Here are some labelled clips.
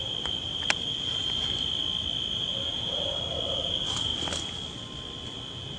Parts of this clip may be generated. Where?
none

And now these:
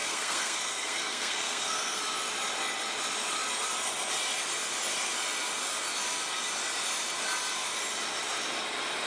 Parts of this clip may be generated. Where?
0.0-2.0 (codec, SNAC)